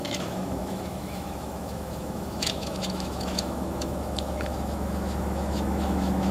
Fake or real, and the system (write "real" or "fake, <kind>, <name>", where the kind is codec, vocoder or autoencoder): fake, autoencoder, DAC-VAE